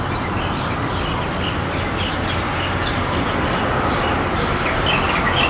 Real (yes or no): yes